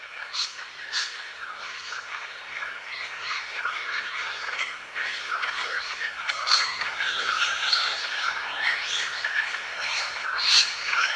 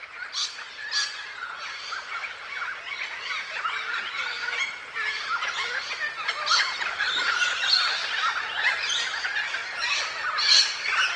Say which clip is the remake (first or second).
first